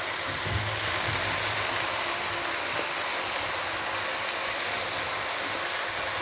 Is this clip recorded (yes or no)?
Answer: yes